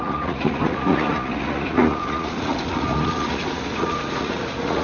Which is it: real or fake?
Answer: fake